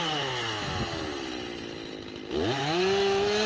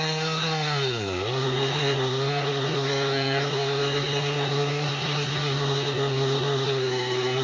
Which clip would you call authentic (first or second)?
first